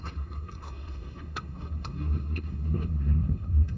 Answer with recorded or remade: remade